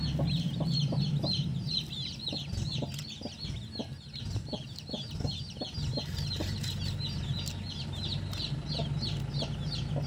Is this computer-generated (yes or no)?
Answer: no